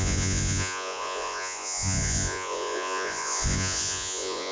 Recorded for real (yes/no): no